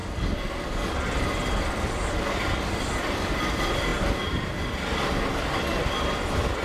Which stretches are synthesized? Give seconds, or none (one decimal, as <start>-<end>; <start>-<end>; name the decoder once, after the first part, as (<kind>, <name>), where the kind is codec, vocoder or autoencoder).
1.6-3.9 (vocoder, BigVGAN v2); 5.4-6.6